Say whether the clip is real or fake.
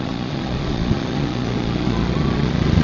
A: fake